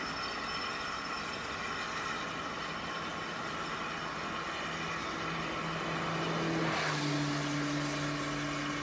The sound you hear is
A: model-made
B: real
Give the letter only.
B